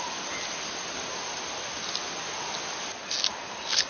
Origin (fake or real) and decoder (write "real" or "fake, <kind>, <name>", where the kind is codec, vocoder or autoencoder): real